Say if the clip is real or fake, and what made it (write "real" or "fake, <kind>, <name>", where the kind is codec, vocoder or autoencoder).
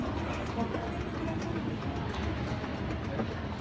real